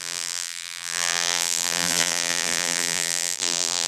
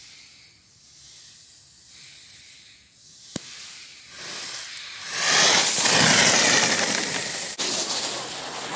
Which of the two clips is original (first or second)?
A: second